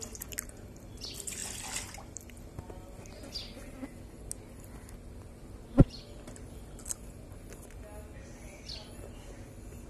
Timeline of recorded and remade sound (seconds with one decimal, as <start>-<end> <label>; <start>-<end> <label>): 0.0-9.9 recorded